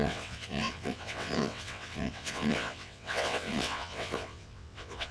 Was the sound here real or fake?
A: fake